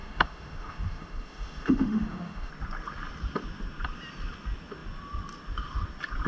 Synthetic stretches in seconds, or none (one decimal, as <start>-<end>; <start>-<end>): 0.0-2.5